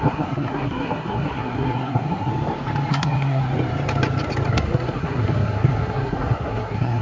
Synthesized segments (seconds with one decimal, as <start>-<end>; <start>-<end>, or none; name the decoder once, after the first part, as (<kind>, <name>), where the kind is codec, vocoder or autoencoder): 0.0-2.3 (codec, SNAC); 2.9-3.4; 4.5-7.0